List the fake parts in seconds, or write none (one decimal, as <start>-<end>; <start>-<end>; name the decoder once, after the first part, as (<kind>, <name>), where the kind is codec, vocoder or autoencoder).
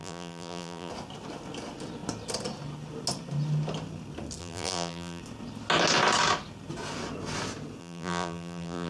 0.0-0.9 (vocoder, BigVGAN v2); 4.4-5.2; 7.8-8.9